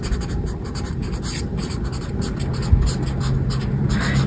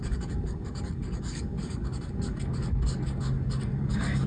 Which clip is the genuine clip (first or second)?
first